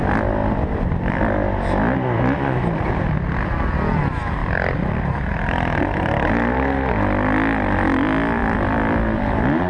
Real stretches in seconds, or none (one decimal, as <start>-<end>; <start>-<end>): 0.0-0.4; 1.2-4.4; 5.8-8.4